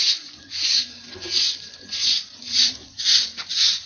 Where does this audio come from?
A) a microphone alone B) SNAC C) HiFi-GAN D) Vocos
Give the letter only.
D